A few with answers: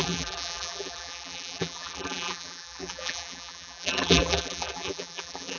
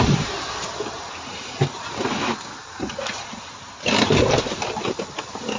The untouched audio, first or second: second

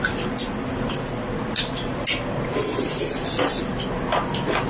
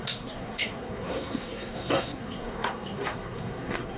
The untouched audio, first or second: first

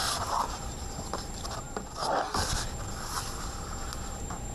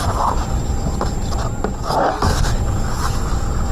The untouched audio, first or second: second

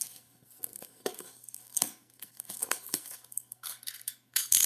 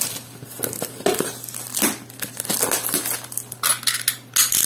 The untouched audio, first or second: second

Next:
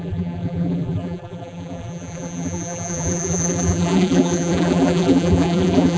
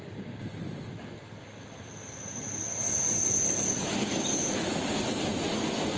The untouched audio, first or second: second